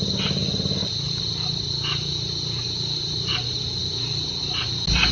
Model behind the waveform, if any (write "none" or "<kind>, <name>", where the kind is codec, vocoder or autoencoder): none